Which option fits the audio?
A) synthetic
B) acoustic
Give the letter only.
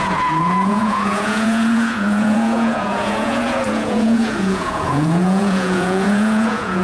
A